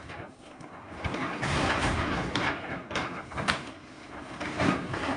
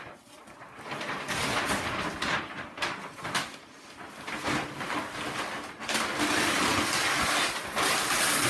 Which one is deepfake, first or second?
first